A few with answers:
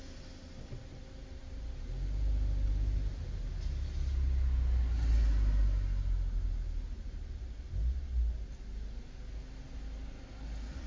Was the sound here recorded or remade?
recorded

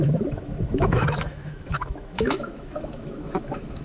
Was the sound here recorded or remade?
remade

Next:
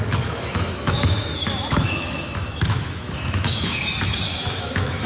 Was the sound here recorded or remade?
remade